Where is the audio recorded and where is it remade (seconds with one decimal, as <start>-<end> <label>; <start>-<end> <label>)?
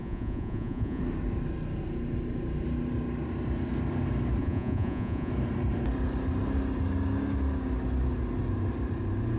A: 0.0-1.0 remade; 1.0-4.4 recorded; 4.4-5.3 remade; 5.3-9.4 recorded